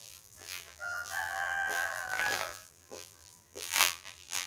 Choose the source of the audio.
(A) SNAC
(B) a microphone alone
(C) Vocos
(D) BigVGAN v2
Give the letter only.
D